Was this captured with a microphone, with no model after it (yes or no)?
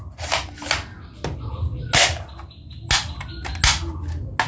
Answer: yes